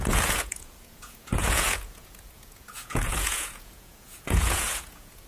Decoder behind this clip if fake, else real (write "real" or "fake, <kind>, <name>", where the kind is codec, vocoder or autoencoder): fake, vocoder, Vocos